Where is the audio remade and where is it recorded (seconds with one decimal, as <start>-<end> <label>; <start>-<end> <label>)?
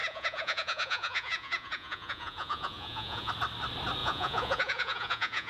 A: 0.0-3.3 remade; 3.3-4.0 recorded; 4.0-5.5 remade